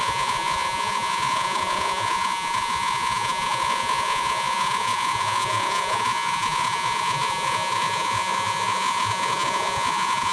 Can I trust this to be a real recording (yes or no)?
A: no